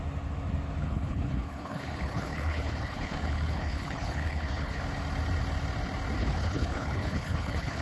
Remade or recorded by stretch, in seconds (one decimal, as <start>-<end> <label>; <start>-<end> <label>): 0.0-0.8 recorded; 0.8-4.8 remade; 4.8-6.2 recorded; 6.2-7.8 remade